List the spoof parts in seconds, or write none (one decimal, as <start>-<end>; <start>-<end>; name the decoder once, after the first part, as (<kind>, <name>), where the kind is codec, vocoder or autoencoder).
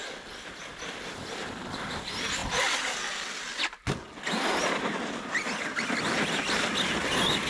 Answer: none